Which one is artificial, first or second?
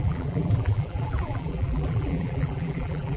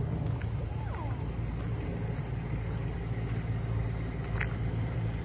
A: first